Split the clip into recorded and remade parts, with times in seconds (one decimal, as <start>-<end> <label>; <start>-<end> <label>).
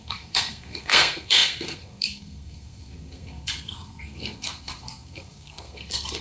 0.0-6.2 remade